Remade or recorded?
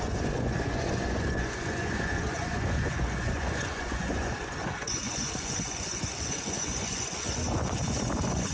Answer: remade